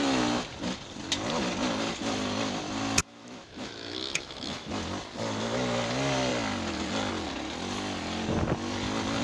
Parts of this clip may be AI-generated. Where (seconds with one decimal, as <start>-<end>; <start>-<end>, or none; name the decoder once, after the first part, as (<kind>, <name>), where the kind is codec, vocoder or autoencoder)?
3.0-4.7 (autoencoder, DAC-VAE)